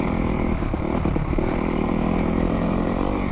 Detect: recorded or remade remade